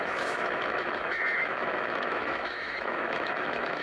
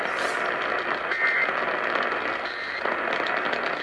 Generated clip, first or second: first